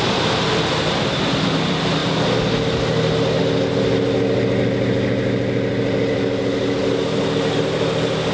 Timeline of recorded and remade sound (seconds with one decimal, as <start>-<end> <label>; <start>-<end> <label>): 0.0-8.3 recorded